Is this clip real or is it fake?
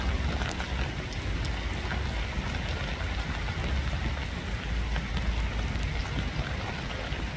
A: real